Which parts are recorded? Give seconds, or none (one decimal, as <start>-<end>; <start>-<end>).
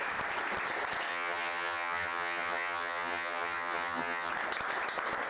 0.0-1.1; 4.3-5.3